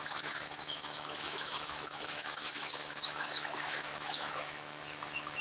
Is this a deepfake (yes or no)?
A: yes